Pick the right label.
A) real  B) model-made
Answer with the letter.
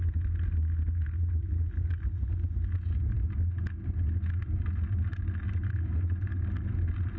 A